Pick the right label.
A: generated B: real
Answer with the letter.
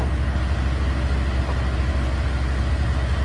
B